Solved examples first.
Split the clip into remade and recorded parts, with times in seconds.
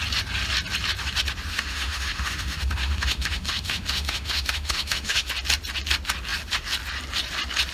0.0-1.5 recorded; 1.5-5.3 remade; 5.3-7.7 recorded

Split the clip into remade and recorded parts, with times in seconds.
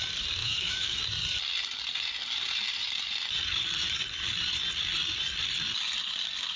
0.0-0.4 recorded; 0.4-1.0 remade; 1.0-6.6 recorded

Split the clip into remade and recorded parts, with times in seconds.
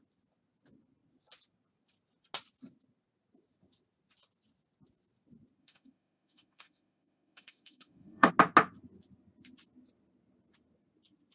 0.0-5.6 recorded; 5.6-8.3 remade; 8.3-11.3 recorded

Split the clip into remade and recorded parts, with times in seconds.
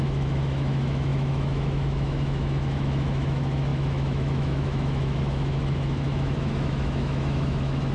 0.0-7.9 remade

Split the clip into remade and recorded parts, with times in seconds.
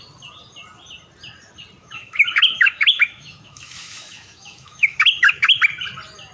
0.0-1.8 recorded; 1.8-5.6 remade; 5.6-6.3 recorded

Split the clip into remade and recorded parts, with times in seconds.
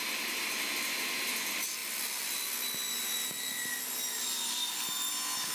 0.0-5.5 recorded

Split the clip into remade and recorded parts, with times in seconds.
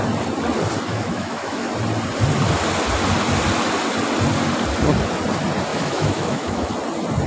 0.0-0.9 recorded; 0.9-1.7 remade; 1.7-5.7 recorded; 5.7-6.7 remade; 6.7-7.3 recorded